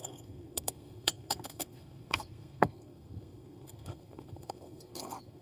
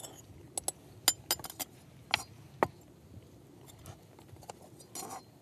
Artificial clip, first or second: first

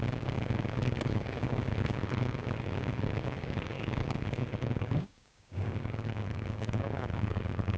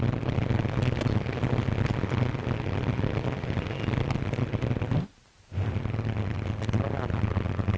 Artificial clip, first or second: first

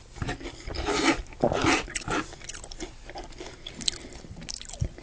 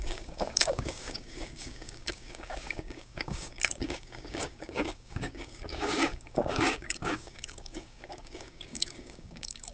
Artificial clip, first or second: second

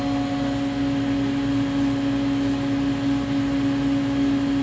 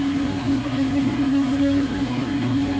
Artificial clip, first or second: second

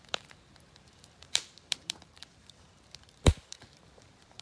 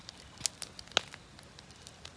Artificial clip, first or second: first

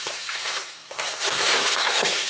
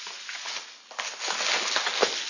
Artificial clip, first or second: first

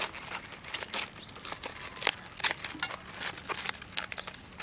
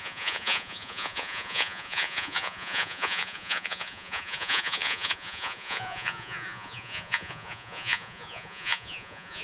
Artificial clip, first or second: second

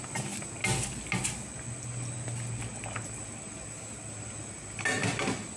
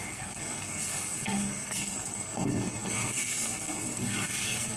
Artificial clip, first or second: second